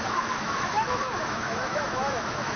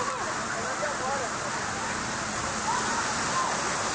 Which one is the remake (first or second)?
first